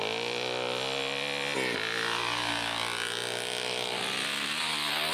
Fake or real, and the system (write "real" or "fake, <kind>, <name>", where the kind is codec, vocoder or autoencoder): real